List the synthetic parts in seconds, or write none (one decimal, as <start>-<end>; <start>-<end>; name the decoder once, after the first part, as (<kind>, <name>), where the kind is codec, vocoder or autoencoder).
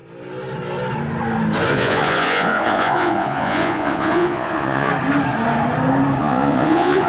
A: 1.7-4.9 (vocoder, Vocos); 6.2-7.1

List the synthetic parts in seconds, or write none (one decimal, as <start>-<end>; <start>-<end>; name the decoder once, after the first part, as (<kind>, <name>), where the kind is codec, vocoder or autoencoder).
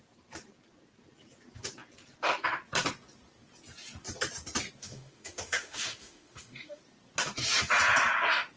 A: 4.8-6.8 (autoencoder, DAC-VAE)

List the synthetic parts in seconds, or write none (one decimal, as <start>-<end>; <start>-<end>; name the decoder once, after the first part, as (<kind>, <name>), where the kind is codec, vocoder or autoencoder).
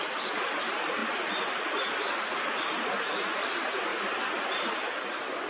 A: 3.9-5.5 (vocoder, BigVGAN v2)